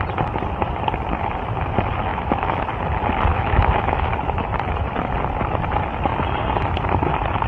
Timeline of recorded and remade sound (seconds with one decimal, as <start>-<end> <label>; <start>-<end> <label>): 0.0-2.1 recorded; 2.1-2.6 remade; 2.6-3.3 recorded; 3.3-4.1 remade; 4.1-7.5 recorded